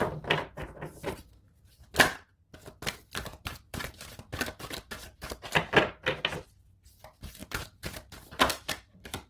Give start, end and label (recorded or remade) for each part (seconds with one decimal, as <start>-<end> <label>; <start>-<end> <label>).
0.0-0.9 recorded; 0.9-1.6 remade; 1.6-3.3 recorded; 3.3-3.9 remade; 3.9-5.0 recorded; 5.0-6.2 remade; 6.2-7.4 recorded; 7.4-9.3 remade